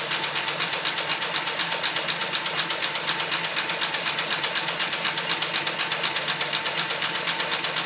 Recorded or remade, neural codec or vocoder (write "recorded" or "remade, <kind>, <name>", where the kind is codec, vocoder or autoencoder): recorded